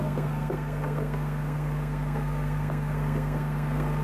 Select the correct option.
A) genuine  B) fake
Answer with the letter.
B